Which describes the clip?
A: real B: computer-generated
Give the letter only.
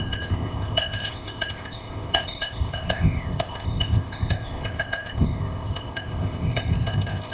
B